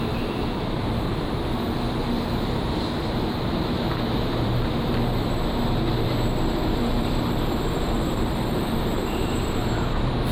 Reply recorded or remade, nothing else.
remade